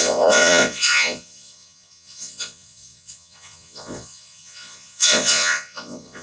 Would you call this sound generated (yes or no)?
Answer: yes